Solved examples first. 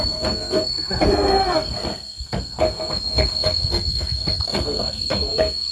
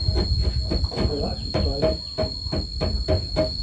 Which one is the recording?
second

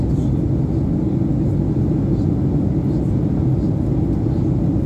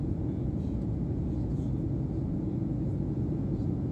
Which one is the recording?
first